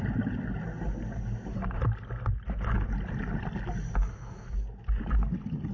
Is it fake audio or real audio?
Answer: real